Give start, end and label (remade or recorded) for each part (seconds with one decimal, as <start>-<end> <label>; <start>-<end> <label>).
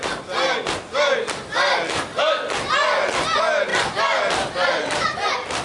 0.0-5.6 recorded